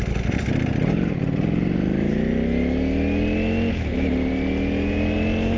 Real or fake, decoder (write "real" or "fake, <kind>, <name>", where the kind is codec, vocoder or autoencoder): real